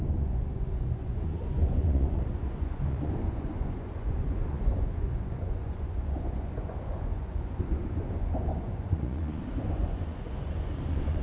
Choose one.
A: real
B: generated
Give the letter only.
B